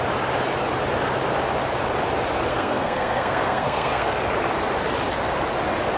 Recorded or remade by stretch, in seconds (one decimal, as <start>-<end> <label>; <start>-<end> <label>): 0.0-2.5 recorded; 2.5-4.2 remade; 4.2-6.0 recorded